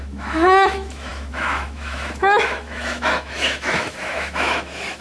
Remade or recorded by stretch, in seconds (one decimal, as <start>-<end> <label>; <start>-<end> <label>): 0.0-5.0 remade